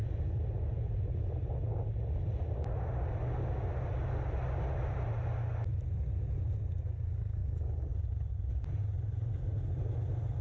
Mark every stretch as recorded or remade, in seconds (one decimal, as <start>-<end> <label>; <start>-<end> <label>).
0.0-7.4 recorded; 7.4-8.5 remade; 8.5-10.4 recorded